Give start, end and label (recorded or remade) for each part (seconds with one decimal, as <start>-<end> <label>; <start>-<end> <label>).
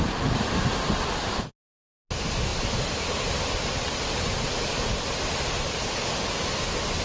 0.0-7.0 recorded